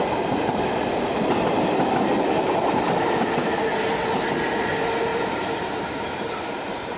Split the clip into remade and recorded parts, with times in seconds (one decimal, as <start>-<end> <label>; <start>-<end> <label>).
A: 0.0-5.1 recorded; 5.1-7.0 remade